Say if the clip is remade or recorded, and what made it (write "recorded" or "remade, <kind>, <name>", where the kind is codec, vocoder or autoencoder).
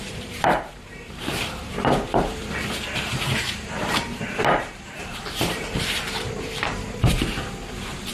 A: remade, vocoder, BigVGAN v2